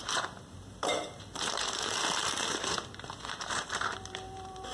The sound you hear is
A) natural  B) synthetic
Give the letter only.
B